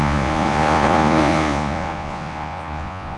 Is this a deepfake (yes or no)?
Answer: yes